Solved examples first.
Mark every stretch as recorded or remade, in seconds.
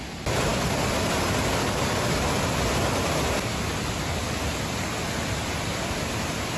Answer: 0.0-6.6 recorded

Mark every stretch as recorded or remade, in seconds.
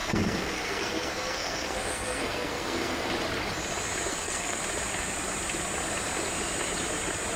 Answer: 0.0-3.1 remade; 3.1-4.1 recorded; 4.1-4.6 remade; 4.6-7.4 recorded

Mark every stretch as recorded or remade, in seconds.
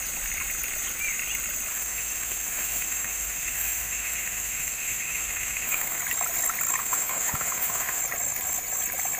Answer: 0.0-1.7 recorded; 1.7-6.0 remade; 6.0-6.8 recorded; 6.8-8.0 remade; 8.0-9.2 recorded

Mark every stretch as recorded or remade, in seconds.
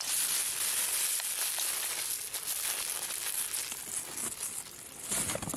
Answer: 0.0-5.6 recorded